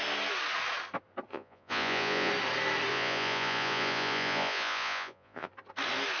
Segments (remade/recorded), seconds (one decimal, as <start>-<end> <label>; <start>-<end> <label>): 0.0-1.3 recorded; 1.3-2.3 remade; 2.3-2.9 recorded; 2.9-5.5 remade; 5.5-6.2 recorded